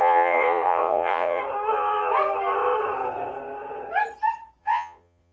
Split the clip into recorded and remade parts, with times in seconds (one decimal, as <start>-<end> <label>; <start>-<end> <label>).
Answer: 0.0-1.4 remade; 1.4-4.6 recorded; 4.6-5.3 remade